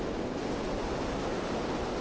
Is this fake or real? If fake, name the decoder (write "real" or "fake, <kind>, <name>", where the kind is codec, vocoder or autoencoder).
real